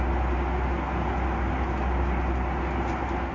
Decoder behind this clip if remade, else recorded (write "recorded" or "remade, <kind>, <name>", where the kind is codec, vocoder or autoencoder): recorded